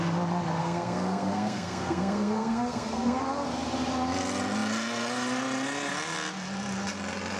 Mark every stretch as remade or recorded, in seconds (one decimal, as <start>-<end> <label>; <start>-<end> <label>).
0.0-0.6 recorded; 0.6-3.2 remade; 3.2-7.4 recorded

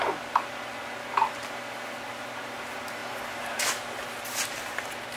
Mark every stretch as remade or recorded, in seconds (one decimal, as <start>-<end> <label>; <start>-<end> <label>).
0.0-5.2 recorded

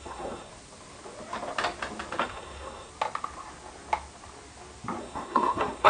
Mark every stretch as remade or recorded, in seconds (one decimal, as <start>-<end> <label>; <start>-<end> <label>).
0.0-0.5 remade; 0.5-2.2 recorded; 2.2-2.9 remade; 2.9-5.0 recorded; 5.0-5.9 remade

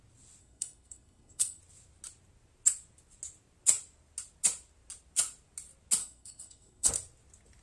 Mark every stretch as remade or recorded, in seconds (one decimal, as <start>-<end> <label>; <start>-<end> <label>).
0.0-0.4 recorded; 0.4-1.6 remade; 1.6-6.0 recorded; 6.0-6.9 remade; 6.9-7.6 recorded

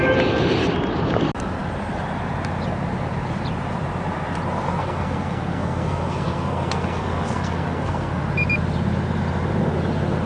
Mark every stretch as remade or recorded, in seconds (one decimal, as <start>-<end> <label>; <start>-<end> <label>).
0.0-4.8 recorded; 4.8-8.2 remade; 8.2-10.3 recorded

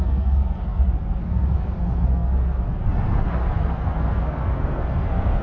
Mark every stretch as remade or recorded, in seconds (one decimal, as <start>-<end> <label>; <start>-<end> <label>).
0.0-5.4 remade